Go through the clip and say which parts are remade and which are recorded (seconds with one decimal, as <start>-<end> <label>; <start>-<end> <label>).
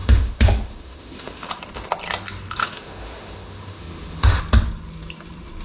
0.0-1.5 remade; 1.5-2.6 recorded; 2.6-4.4 remade; 4.4-5.6 recorded